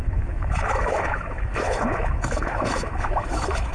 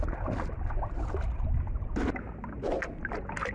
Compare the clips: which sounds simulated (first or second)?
first